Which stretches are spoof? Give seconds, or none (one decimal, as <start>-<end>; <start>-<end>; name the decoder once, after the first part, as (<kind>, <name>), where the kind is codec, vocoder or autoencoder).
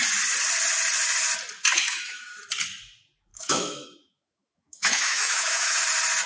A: 1.7-2.3 (autoencoder, DAC-VAE); 3.3-5.8